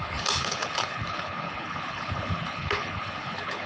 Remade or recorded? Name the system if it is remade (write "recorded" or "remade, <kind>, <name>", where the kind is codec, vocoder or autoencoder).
remade, codec, HILCodec